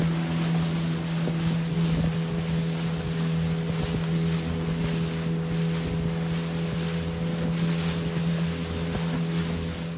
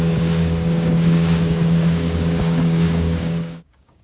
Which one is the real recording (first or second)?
first